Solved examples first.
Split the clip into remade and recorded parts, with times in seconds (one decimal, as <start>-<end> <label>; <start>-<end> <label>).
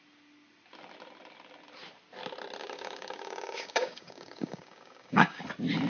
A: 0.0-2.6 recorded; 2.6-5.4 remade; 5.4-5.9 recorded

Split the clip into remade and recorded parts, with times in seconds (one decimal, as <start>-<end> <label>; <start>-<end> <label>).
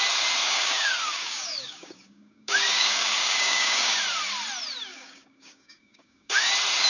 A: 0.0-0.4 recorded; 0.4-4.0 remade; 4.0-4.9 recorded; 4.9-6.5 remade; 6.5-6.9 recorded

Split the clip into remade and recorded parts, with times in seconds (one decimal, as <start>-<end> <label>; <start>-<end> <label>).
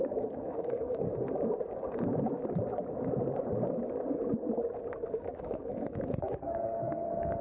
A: 0.0-1.1 remade; 1.1-5.2 recorded; 5.2-7.4 remade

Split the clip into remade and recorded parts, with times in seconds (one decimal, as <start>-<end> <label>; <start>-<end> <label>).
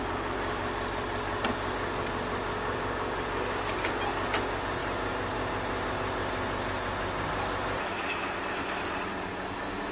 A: 0.0-2.5 recorded; 2.5-3.2 remade; 3.2-9.9 recorded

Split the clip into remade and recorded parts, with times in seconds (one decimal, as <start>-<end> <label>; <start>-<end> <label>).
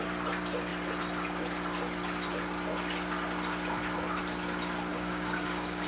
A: 0.0-4.9 recorded; 4.9-5.9 remade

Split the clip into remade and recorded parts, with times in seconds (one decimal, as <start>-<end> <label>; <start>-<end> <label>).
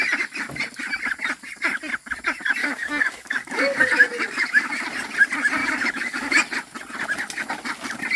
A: 0.0-2.6 recorded; 2.6-4.7 remade; 4.7-5.6 recorded; 5.6-6.3 remade; 6.3-8.2 recorded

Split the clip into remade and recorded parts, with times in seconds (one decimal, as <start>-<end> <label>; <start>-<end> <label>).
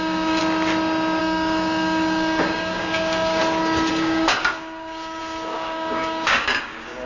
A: 0.0-0.4 remade; 0.4-1.2 recorded; 1.2-3.4 remade; 3.4-3.9 recorded; 3.9-7.1 remade